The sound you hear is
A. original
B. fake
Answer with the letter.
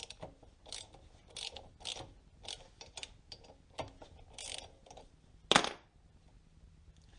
A